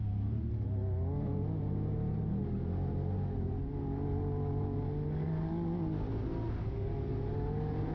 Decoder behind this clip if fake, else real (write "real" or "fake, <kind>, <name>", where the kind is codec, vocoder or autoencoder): real